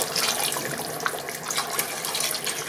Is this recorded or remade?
remade